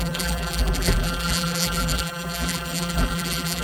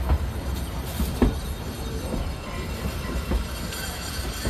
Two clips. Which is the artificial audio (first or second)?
first